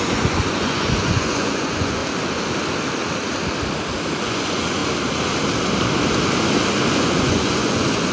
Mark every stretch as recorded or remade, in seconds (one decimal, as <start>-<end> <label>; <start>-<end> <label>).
0.0-2.0 remade; 2.0-4.2 recorded; 4.2-4.8 remade; 4.8-6.9 recorded; 6.9-8.1 remade